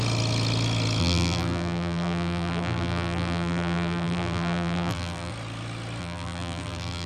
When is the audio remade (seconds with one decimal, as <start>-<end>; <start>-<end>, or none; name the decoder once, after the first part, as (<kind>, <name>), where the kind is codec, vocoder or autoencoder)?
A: 1.0-5.3 (vocoder, BigVGAN v2); 6.0-7.1